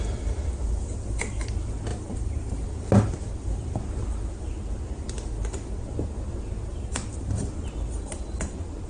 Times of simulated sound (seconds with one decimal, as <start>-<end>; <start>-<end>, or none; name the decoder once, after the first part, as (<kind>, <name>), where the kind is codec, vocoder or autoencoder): 1.9-2.6 (vocoder, BigVGAN v2); 6.7-7.7